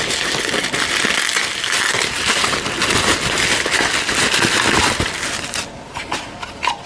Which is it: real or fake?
real